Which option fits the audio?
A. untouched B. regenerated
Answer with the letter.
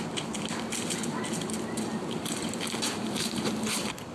A